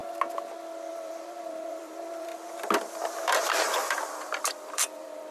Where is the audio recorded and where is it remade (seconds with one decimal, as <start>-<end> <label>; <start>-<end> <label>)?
0.0-0.9 recorded; 0.9-2.3 remade; 2.3-4.4 recorded; 4.4-5.3 remade